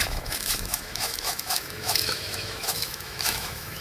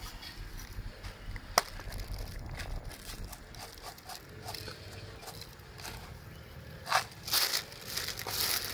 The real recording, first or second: second